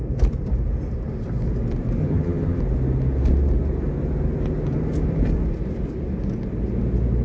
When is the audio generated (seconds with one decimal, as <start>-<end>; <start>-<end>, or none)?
2.0-2.6